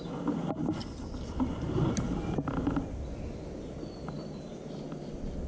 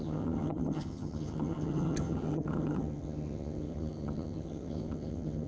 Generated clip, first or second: second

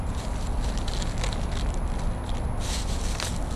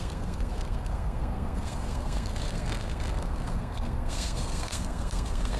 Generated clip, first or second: second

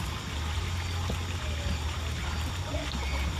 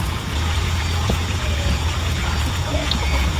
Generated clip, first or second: second